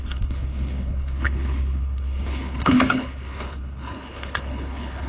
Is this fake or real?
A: fake